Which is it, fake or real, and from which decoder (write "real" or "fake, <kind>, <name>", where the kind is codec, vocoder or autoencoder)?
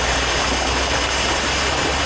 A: real